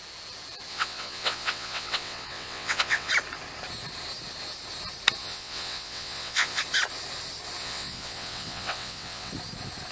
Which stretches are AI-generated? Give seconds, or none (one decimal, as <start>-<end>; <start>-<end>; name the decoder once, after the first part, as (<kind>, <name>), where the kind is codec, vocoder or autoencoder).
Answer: 0.7-3.1 (vocoder, WaveNeXt); 5.2-6.6; 7.6-9.3